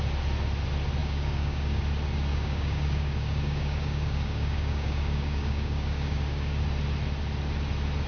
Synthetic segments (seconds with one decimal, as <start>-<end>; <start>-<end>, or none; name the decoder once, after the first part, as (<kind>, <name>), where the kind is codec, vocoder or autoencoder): 1.0-1.8 (codec, DAC); 2.3-6.6